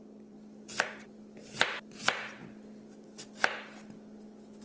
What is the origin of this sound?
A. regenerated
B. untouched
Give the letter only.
B